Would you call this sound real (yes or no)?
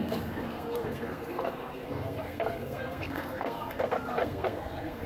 no